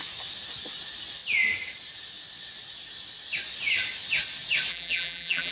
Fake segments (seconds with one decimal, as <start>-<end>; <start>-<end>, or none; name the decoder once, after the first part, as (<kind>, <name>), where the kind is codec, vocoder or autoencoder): 4.7-5.5 (vocoder, BigVGAN v2)